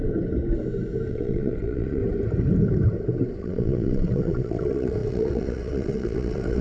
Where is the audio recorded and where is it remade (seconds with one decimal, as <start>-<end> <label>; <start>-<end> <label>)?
0.0-1.1 recorded; 1.1-2.0 remade; 2.0-3.4 recorded; 3.4-6.6 remade